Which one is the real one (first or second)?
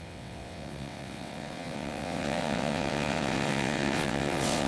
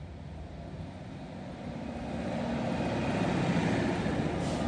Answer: second